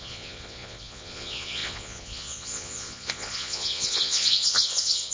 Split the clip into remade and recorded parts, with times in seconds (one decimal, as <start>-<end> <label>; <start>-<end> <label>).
0.0-5.1 remade